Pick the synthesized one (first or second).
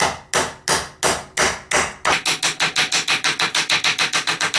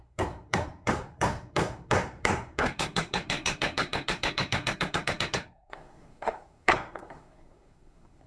second